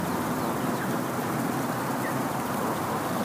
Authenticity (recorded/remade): recorded